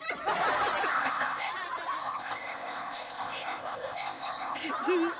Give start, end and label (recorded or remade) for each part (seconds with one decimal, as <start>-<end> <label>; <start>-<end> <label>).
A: 0.0-0.9 recorded; 0.9-1.5 remade; 1.5-2.0 recorded; 2.0-4.7 remade; 4.7-5.2 recorded